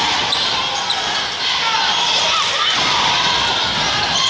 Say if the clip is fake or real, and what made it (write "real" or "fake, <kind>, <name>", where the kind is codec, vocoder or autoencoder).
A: real